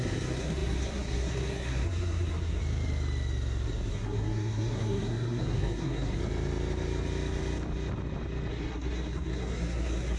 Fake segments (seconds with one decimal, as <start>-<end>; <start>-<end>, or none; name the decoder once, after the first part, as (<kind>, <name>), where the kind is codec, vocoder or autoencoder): 0.0-2.6 (codec, SNAC); 3.9-6.2; 8.5-10.2